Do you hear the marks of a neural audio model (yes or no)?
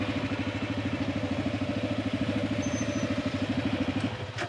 no